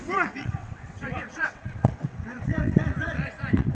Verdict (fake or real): fake